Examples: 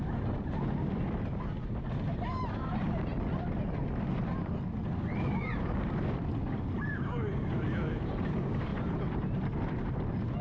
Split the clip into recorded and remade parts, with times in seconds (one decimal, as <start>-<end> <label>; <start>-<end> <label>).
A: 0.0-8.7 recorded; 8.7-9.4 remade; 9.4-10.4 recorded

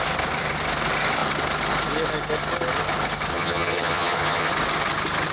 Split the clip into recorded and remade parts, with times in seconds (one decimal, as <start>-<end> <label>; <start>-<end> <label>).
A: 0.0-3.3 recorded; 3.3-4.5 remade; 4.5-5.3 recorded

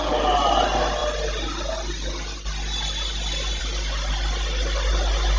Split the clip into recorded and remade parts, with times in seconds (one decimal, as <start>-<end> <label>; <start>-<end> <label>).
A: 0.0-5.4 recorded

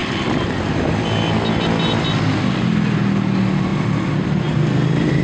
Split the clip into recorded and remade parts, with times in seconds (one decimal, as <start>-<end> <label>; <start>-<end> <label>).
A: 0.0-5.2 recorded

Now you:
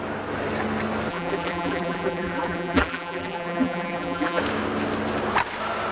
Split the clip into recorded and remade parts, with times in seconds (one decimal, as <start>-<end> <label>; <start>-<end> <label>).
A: 0.0-1.1 recorded; 1.1-4.4 remade; 4.4-5.9 recorded